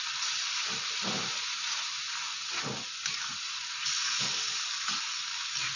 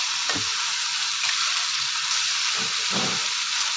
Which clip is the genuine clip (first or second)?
first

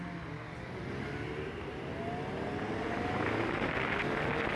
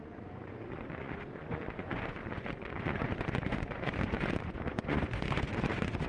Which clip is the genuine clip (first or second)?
first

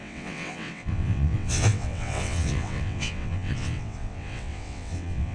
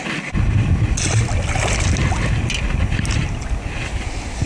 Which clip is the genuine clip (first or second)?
second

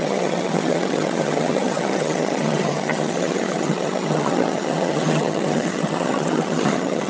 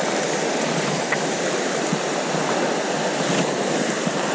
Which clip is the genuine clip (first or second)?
second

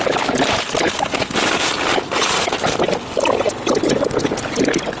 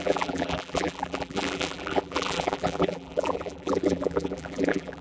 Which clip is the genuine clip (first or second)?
first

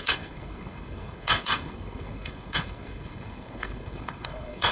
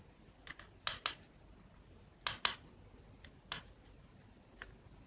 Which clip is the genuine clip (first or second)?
second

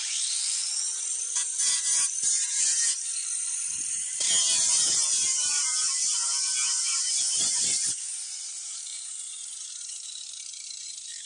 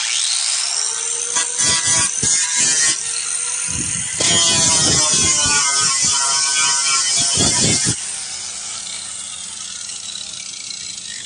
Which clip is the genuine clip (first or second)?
second